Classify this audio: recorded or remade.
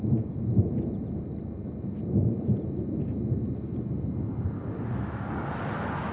recorded